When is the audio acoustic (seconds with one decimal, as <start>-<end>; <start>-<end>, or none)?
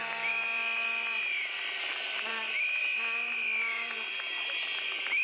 0.0-5.2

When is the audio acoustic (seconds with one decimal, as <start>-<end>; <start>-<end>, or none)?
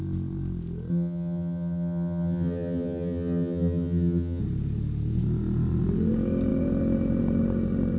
0.0-0.9; 4.4-8.0